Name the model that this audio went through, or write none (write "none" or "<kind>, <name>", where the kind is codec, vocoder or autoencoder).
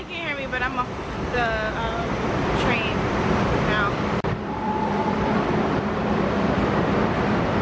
vocoder, BigVGAN v2